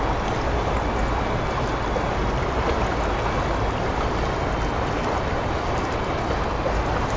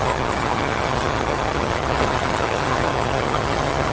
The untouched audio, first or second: first